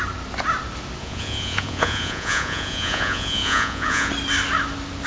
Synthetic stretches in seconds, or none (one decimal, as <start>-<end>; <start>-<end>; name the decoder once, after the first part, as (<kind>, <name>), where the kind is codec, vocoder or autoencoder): 1.0-4.1 (vocoder, Vocos)